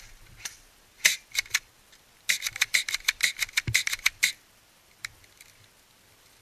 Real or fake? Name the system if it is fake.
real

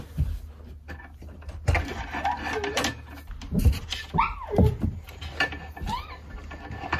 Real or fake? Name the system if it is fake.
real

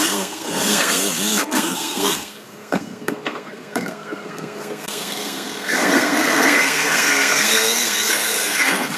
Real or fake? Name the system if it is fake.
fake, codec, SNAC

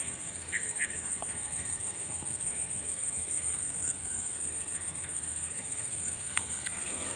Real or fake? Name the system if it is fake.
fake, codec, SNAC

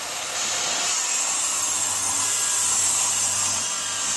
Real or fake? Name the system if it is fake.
real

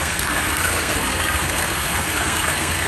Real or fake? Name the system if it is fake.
fake, codec, SNAC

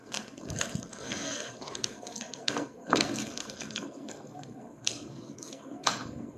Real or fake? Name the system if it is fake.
fake, codec, SNAC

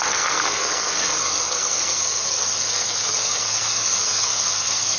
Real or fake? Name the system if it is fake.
fake, codec, SNAC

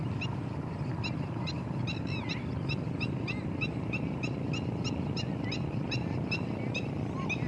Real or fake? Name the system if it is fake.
real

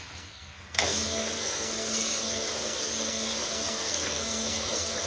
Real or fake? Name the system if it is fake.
fake, codec, SNAC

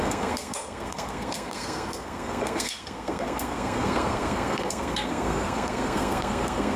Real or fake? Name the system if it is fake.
fake, codec, SNAC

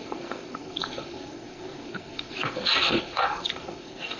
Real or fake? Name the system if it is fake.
fake, codec, SNAC